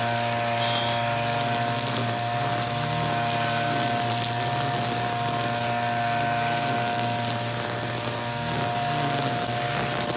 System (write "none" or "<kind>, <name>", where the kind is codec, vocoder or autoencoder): none